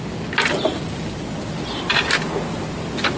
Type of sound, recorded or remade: recorded